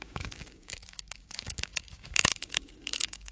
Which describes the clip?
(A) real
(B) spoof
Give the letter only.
B